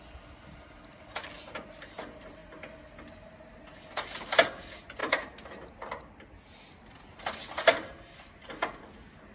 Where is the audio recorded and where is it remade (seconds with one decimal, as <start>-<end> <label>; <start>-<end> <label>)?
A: 0.0-9.3 recorded